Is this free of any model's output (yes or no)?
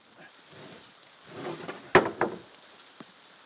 yes